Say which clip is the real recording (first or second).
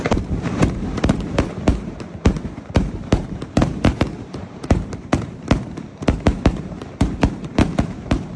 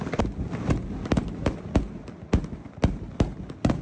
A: second